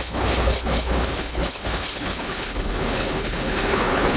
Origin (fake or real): fake